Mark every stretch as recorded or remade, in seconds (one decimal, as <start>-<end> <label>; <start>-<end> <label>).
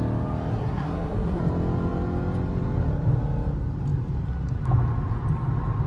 0.0-0.5 recorded; 0.5-1.4 remade; 1.4-5.9 recorded